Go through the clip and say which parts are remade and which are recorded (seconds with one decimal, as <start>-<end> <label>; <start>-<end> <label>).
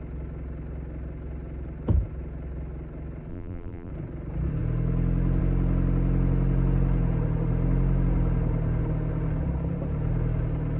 0.0-3.3 recorded; 3.3-3.9 remade; 3.9-10.8 recorded